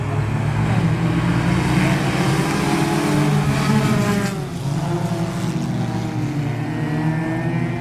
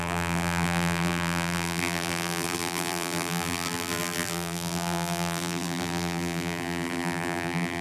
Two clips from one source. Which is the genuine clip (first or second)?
first